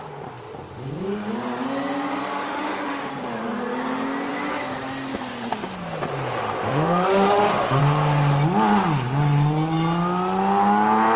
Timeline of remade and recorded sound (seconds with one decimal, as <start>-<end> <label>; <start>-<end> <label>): 0.0-2.4 recorded; 2.4-3.1 remade; 3.1-6.6 recorded; 6.6-7.8 remade; 7.8-11.2 recorded